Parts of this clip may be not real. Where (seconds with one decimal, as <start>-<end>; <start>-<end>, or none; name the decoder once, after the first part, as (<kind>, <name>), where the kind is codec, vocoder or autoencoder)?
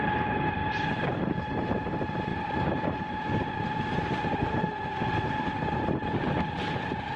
0.6-1.3 (vocoder, BigVGAN v2); 2.3-5.4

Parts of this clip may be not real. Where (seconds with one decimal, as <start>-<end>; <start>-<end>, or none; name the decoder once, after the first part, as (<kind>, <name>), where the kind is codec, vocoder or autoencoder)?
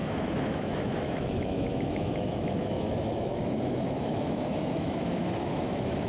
0.0-6.1 (autoencoder, DAC-VAE)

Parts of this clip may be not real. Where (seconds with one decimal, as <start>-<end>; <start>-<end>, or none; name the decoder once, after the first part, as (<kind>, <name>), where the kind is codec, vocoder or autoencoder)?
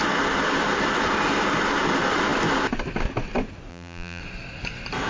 3.7-4.2 (vocoder, BigVGAN v2)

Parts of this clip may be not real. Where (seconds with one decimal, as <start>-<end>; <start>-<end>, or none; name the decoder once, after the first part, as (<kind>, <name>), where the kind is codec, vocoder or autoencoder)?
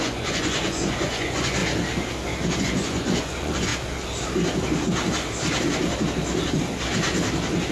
0.0-1.6 (vocoder, Vocos); 2.6-3.7